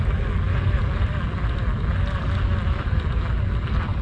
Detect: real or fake real